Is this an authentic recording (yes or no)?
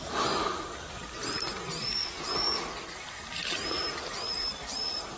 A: no